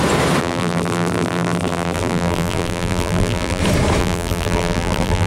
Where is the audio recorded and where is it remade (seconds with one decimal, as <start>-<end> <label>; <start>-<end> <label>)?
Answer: 0.0-0.4 recorded; 0.4-3.6 remade; 3.6-4.0 recorded; 4.0-5.3 remade